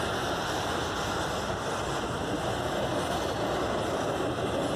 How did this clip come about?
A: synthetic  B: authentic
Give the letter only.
B